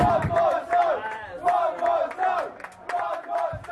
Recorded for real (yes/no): no